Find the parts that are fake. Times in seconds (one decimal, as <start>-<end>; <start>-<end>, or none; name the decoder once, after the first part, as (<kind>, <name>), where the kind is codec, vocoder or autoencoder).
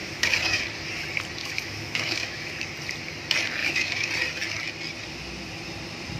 0.0-0.6 (autoencoder, DAC-VAE); 1.4-2.5; 3.6-4.1